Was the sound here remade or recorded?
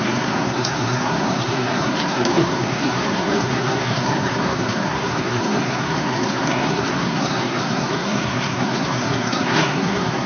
remade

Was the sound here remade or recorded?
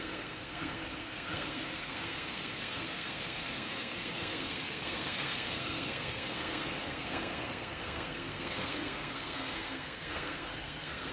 remade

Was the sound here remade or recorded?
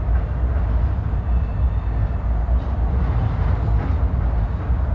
recorded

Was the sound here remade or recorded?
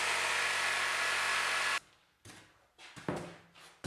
recorded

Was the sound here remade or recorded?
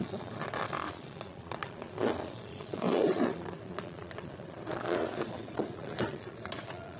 remade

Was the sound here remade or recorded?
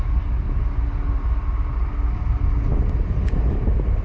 recorded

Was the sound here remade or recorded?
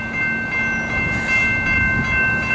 recorded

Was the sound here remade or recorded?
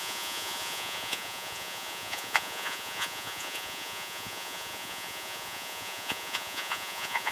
remade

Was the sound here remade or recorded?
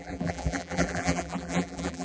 remade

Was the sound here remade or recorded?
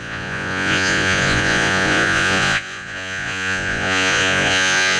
remade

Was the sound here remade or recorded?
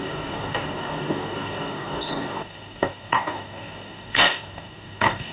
remade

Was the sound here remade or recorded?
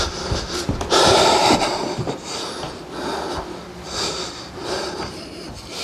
remade